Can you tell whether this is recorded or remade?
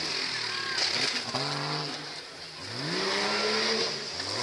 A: recorded